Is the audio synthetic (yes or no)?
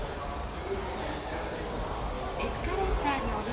no